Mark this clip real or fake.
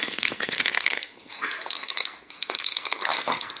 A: fake